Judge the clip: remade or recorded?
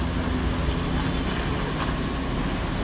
recorded